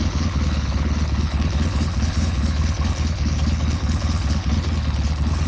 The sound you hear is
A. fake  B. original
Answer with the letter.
A